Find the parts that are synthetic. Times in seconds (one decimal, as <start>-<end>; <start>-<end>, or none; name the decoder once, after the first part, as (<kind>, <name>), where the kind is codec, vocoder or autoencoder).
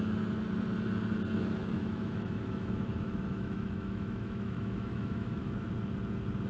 1.8-5.7 (autoencoder, DAC-VAE)